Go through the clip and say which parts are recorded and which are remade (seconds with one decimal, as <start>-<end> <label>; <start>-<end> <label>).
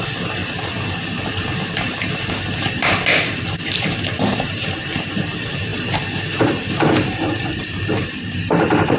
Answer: 0.0-0.4 remade; 0.4-1.3 recorded; 1.3-5.7 remade; 5.7-6.4 recorded; 6.4-9.0 remade